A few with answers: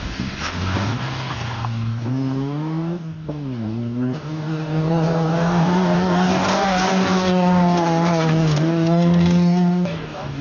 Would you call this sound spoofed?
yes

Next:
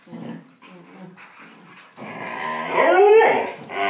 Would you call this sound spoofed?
no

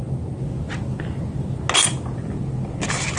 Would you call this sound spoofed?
no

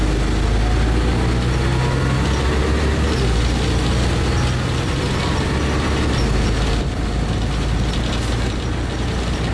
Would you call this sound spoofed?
no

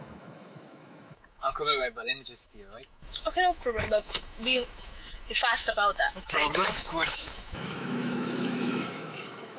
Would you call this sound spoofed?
yes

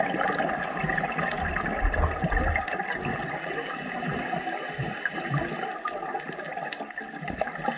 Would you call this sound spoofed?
no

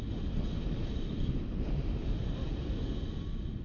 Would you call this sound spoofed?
no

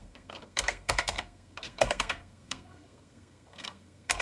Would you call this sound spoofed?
yes